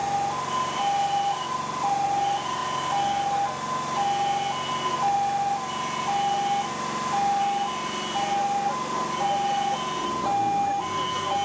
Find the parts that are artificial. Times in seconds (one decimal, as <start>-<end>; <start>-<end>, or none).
none